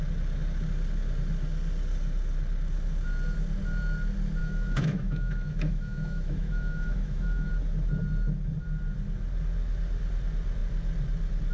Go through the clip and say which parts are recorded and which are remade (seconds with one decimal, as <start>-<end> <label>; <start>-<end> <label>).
0.0-4.4 recorded; 4.4-7.5 remade; 7.5-11.5 recorded